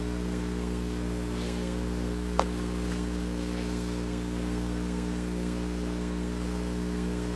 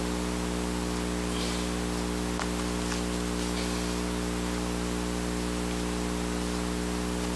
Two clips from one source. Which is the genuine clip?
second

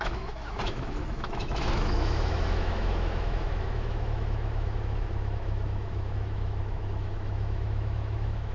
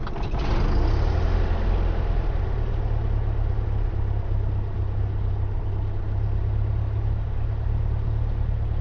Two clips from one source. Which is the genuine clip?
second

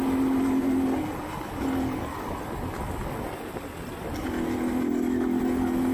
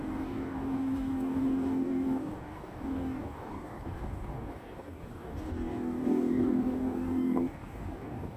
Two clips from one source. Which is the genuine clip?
first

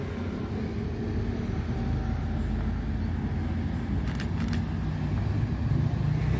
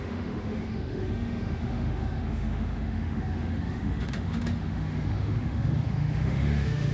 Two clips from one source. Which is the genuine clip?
first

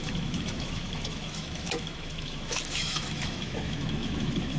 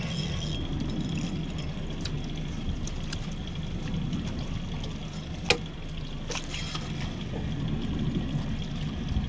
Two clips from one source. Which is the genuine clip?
second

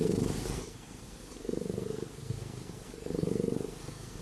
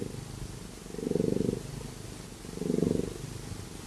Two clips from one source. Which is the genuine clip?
second